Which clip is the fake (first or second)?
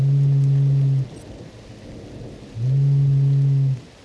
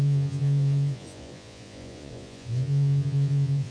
second